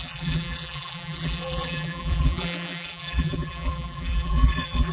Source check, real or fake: fake